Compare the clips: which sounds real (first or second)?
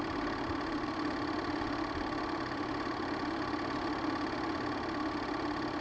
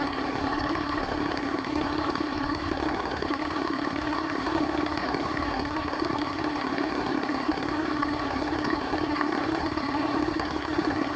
first